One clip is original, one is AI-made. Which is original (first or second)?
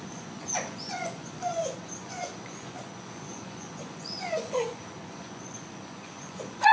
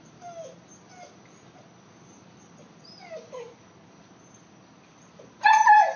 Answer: second